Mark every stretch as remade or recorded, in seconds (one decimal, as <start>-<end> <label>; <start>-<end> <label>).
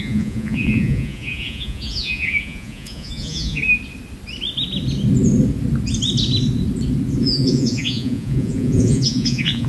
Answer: 0.0-3.6 remade; 3.6-7.2 recorded; 7.2-9.7 remade